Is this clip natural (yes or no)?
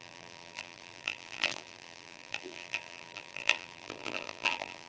no